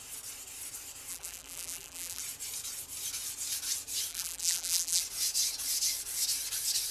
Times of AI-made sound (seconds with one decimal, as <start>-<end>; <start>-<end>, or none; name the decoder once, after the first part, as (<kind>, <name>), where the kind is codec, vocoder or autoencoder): 1.1-2.2 (vocoder, BigVGAN v2); 4.1-5.0